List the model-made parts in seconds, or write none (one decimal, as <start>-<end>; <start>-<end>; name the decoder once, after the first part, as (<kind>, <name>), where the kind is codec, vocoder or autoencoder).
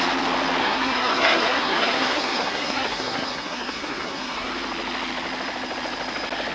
0.6-4.5 (codec, SNAC)